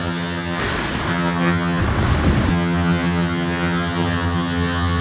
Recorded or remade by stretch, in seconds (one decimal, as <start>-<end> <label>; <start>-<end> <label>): 0.0-0.6 remade; 0.6-1.1 recorded; 1.1-1.8 remade; 1.8-2.5 recorded; 2.5-5.0 remade